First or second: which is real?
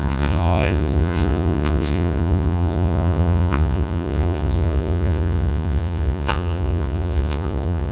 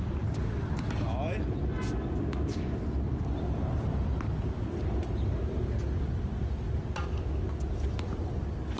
second